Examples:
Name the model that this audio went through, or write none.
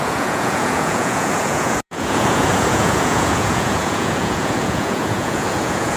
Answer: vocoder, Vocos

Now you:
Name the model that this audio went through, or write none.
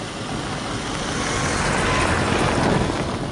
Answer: none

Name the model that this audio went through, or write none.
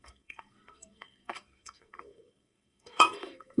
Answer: codec, SNAC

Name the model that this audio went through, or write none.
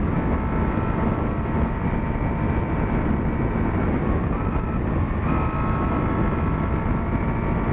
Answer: none